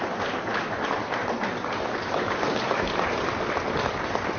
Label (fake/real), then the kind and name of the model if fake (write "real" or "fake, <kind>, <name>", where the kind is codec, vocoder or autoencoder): real